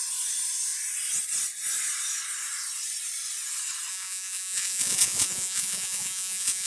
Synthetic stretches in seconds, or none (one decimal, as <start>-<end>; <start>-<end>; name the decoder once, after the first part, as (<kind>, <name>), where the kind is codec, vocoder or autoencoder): 3.9-6.7 (vocoder, Vocos)